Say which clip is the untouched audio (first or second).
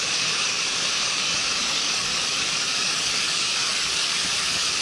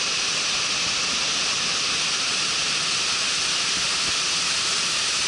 second